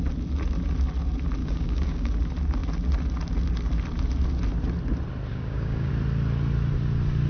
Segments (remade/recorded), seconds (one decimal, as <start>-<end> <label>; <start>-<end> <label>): 0.0-1.4 recorded; 1.4-2.1 remade; 2.1-5.3 recorded; 5.3-5.9 remade; 5.9-7.3 recorded